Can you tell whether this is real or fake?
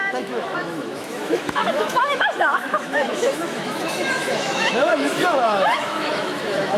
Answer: fake